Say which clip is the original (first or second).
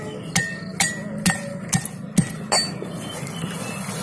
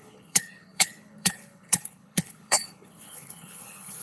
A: first